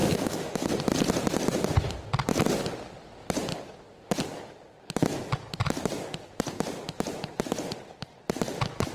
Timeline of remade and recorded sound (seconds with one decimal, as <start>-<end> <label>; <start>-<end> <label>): 0.0-0.7 remade; 0.7-8.9 recorded